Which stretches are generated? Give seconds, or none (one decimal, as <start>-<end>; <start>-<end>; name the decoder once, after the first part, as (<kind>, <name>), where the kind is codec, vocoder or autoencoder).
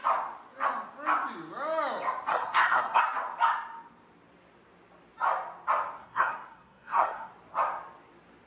2.3-3.0 (codec, SNAC); 6.0-7.3